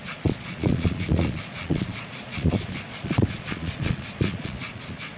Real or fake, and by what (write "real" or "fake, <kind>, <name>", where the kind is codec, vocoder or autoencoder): fake, vocoder, Vocos